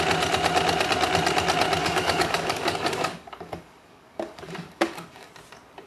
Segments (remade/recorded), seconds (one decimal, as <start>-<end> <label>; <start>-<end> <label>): 0.0-1.8 recorded; 1.8-5.3 remade; 5.3-5.9 recorded